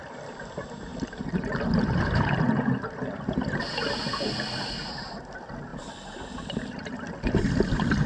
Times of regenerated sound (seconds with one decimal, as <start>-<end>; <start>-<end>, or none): 0.9-3.6